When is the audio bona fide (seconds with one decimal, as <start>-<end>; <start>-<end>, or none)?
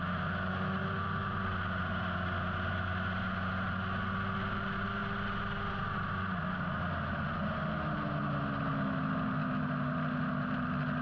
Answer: 0.0-11.0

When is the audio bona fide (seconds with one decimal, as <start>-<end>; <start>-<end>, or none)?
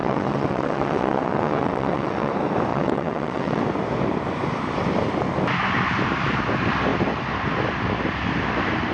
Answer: 2.3-2.7; 3.6-8.9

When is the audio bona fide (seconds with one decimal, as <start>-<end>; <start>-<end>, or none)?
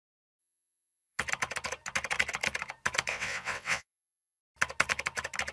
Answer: 0.0-0.4; 1.2-3.1; 4.4-5.5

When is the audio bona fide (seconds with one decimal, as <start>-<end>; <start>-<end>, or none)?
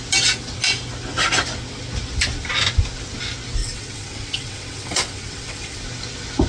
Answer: 0.0-3.6; 5.8-6.5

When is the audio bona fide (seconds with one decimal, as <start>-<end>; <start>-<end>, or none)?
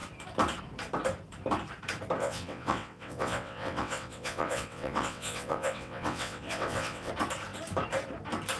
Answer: 0.0-2.2; 7.1-8.6